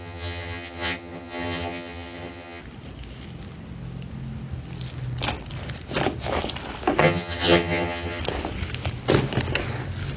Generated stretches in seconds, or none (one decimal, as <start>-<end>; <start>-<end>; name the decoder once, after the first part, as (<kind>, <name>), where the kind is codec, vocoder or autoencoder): 0.0-2.6 (vocoder, HiFi-GAN); 7.0-8.2